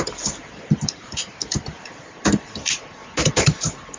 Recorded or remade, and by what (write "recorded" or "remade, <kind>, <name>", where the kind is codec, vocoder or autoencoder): remade, vocoder, BigVGAN v2